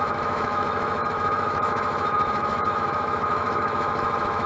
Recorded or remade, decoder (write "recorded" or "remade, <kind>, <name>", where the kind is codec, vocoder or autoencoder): remade, autoencoder, DAC-VAE